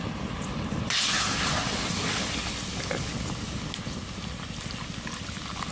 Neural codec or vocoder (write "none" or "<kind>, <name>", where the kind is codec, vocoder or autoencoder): none